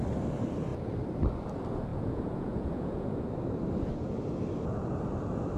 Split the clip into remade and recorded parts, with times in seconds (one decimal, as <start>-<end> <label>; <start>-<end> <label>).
0.0-1.9 recorded; 1.9-3.2 remade; 3.2-5.6 recorded